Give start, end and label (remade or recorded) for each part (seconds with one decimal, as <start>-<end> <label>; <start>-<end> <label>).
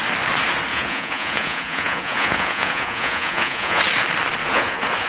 0.0-0.7 recorded; 0.7-3.8 remade; 3.8-4.4 recorded; 4.4-5.1 remade